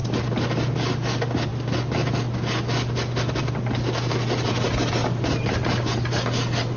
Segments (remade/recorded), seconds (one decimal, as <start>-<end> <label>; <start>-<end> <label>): 0.0-6.8 recorded